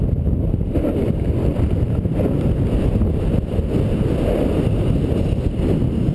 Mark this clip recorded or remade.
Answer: recorded